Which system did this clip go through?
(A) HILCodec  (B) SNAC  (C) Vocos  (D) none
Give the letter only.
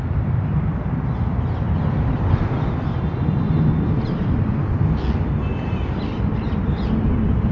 D